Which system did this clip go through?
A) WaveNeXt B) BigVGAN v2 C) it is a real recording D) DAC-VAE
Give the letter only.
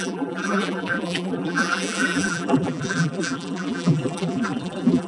B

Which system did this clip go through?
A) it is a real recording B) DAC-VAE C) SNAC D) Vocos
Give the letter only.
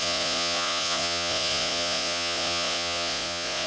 D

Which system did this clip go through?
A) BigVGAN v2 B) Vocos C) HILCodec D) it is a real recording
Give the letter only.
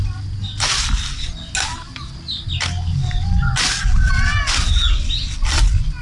D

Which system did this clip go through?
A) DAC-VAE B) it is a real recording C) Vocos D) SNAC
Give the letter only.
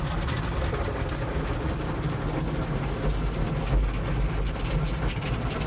B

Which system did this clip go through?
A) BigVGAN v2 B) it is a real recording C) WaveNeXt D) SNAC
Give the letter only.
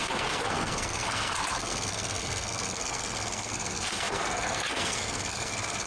D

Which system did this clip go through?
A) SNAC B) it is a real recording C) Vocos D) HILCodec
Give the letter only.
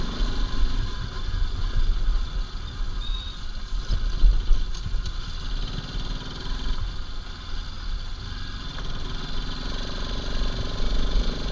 B